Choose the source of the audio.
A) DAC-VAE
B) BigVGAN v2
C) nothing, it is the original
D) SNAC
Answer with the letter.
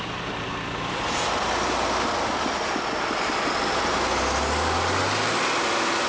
C